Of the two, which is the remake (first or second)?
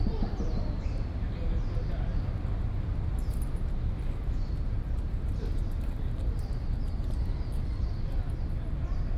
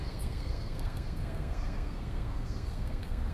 second